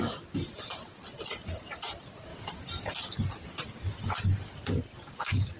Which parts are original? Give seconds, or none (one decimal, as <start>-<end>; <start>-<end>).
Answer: 0.0-2.3; 4.7-5.6